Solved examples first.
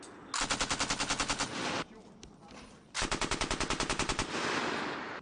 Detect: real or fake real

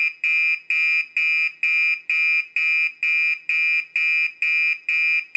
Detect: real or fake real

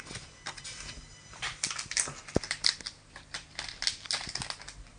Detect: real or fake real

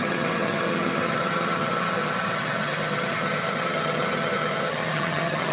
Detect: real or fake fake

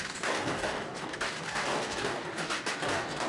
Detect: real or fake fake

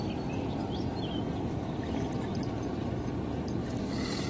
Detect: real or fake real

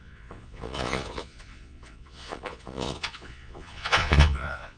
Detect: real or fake fake